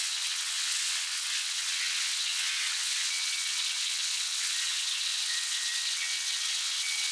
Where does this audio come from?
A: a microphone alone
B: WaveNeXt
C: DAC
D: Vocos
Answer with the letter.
B